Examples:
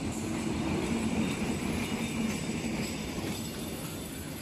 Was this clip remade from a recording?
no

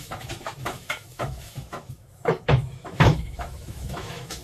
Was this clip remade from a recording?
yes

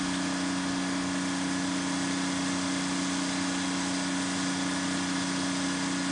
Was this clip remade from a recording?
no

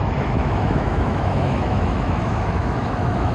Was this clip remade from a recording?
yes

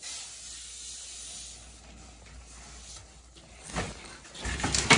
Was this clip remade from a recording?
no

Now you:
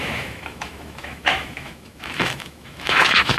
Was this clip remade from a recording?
yes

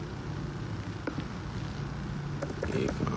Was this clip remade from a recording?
no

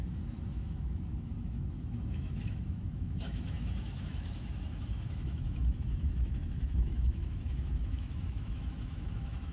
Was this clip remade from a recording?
yes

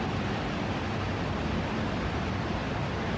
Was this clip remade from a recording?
no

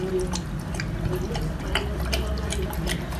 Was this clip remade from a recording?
no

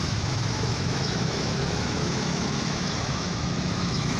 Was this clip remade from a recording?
yes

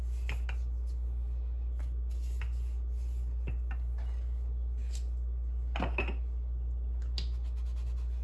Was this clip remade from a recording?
no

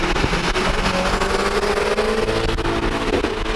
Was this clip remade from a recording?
no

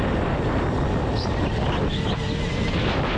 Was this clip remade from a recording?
no